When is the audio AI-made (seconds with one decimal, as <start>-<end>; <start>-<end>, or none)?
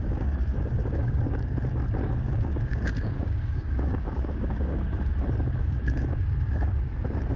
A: 0.0-1.6; 2.2-4.9; 5.5-7.4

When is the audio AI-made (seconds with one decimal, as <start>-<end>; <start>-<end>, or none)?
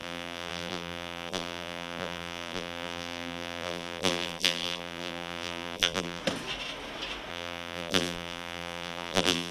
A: 0.0-6.2; 7.3-9.5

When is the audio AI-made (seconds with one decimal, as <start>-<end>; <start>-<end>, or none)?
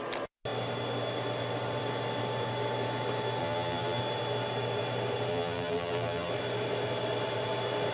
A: 3.4-4.0; 5.3-6.3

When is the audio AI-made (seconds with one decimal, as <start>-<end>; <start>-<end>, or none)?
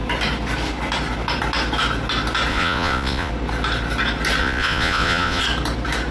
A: 2.5-3.3; 4.4-5.4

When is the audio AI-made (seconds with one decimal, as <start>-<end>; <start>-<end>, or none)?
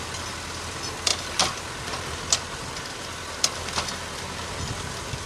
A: none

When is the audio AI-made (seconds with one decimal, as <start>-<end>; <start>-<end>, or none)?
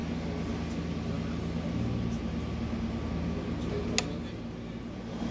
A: none